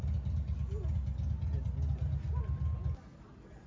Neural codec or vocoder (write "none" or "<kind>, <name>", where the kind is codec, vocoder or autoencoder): none